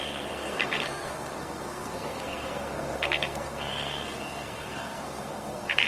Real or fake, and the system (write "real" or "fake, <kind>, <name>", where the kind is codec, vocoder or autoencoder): fake, codec, SNAC